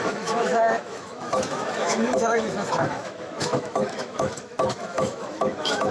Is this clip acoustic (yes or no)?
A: no